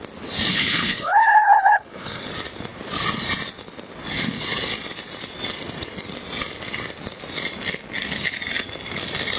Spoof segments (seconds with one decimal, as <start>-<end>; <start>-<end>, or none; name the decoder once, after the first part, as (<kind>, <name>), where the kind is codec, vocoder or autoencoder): 0.5-2.3 (codec, HILCodec)